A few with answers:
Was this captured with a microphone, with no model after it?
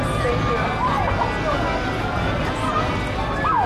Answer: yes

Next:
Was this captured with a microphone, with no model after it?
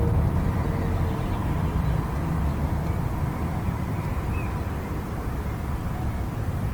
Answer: no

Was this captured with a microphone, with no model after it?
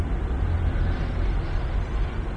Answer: yes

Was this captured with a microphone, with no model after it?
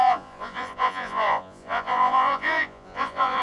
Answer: no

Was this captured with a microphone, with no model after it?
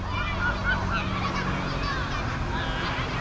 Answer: yes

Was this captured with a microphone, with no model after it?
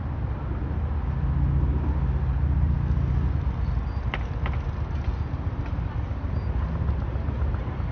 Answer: yes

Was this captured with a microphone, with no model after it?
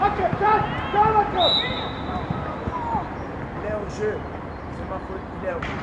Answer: no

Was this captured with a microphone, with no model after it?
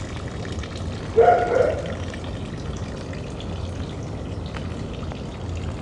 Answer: yes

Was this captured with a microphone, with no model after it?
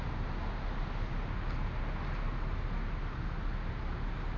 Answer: yes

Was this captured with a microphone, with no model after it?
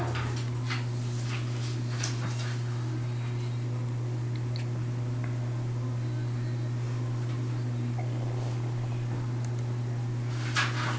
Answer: yes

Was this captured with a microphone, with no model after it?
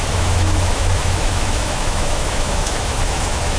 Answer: no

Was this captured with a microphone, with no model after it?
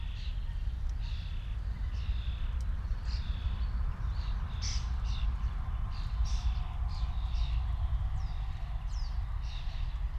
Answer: yes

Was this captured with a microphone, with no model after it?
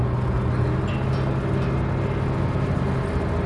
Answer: yes